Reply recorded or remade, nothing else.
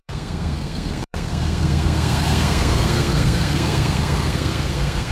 remade